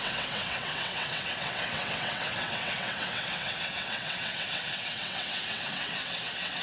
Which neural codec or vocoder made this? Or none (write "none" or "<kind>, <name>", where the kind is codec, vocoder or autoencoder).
vocoder, WaveNeXt